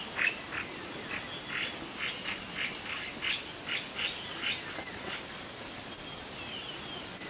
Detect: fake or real real